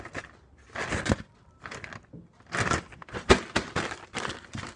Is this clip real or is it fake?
real